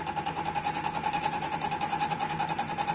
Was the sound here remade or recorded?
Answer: recorded